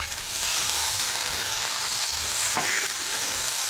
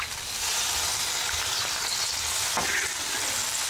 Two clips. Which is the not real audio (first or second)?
first